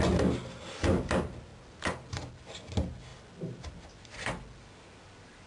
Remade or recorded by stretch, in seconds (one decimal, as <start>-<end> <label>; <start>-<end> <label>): 0.0-5.5 recorded